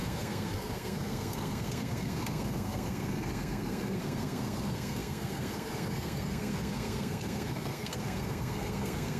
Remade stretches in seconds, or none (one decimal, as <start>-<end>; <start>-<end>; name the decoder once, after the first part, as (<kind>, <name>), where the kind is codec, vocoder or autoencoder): 0.0-9.2 (codec, SNAC)